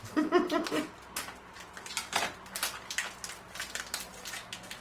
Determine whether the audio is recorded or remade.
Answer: recorded